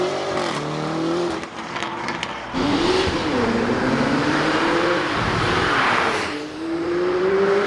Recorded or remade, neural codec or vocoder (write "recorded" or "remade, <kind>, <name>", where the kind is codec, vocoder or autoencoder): remade, vocoder, BigVGAN v2